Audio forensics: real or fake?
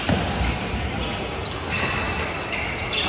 real